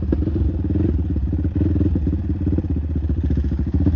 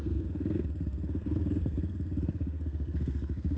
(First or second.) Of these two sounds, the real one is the first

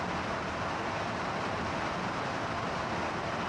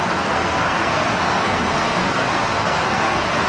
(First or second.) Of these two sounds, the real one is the first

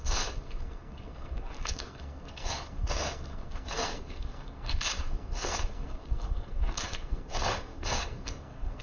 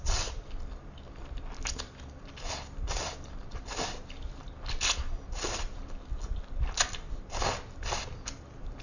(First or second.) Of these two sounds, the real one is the second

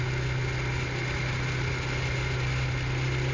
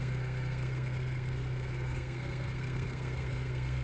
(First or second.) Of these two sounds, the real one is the first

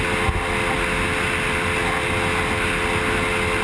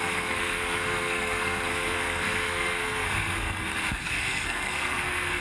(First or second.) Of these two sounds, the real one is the first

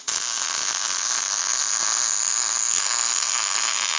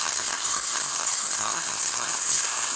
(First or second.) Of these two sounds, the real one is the first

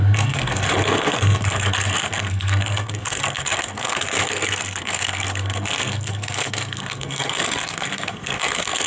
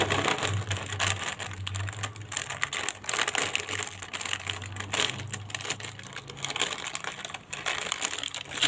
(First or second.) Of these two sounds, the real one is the second